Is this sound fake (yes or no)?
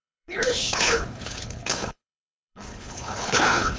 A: yes